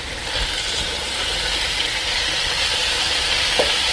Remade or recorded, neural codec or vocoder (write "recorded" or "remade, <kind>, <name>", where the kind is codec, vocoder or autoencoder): recorded